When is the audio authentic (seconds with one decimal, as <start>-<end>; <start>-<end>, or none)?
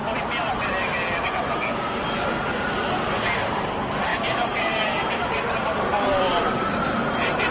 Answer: 0.0-4.1